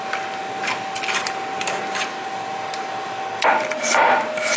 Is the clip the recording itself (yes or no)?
yes